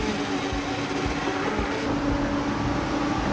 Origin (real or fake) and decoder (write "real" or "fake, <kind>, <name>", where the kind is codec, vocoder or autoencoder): real